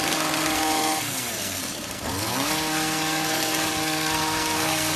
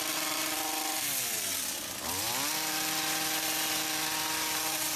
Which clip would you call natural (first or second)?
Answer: second